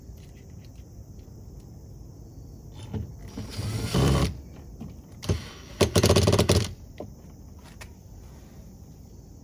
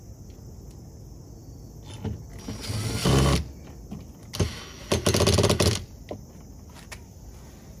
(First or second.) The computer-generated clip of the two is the first